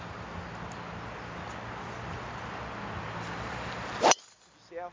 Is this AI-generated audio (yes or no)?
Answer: no